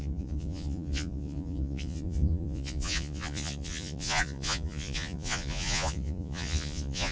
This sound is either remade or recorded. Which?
remade